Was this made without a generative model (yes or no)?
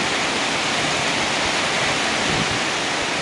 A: yes